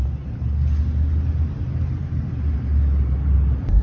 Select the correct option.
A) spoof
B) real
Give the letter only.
B